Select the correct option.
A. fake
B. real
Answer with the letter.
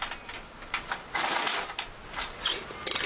B